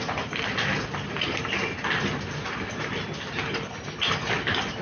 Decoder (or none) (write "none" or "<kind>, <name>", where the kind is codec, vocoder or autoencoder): none